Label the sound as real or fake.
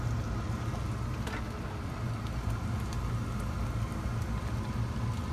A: real